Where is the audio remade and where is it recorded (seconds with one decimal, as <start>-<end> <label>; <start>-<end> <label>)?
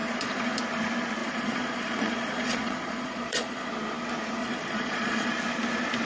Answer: 0.0-0.6 remade; 0.6-1.2 recorded; 1.2-3.7 remade; 3.7-4.4 recorded; 4.4-5.3 remade; 5.3-6.0 recorded